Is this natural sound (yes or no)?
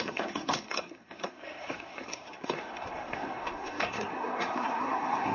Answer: no